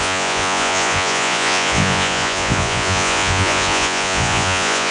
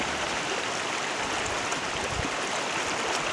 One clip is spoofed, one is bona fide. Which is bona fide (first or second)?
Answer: second